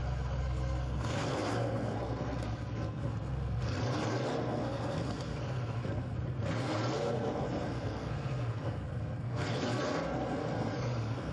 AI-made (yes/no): yes